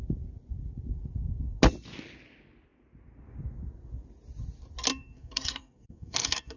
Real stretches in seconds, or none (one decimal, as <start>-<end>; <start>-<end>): 0.0-4.9